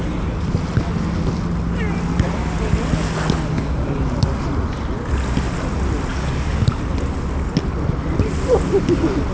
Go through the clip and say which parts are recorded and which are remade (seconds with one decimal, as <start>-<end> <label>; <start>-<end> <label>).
0.0-6.1 recorded; 6.1-6.8 remade; 6.8-9.3 recorded